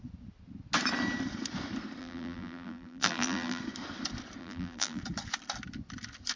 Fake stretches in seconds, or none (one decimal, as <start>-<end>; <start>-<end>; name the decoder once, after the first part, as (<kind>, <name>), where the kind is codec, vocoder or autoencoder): 2.0-3.6 (vocoder, BigVGAN v2); 4.4-5.0